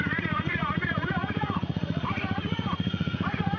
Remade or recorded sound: remade